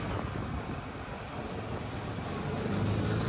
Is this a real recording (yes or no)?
yes